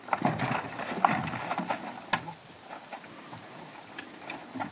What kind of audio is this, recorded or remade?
recorded